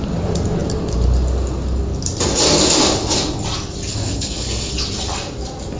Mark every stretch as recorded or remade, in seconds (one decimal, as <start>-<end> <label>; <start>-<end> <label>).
0.0-3.9 recorded; 3.9-4.7 remade; 4.7-5.8 recorded